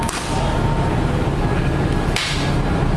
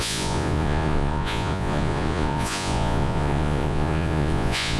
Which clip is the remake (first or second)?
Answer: second